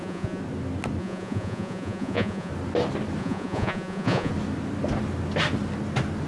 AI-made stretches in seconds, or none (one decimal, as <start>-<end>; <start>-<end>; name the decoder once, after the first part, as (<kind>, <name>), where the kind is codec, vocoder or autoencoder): 0.0-0.4 (vocoder, Vocos); 1.0-2.5; 3.2-4.3